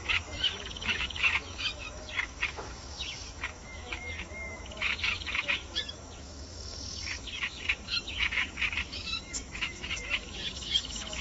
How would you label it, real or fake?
fake